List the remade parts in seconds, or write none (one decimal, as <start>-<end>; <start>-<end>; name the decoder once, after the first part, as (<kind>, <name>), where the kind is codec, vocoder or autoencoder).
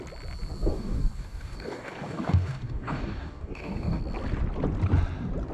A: 0.7-4.0 (codec, DAC)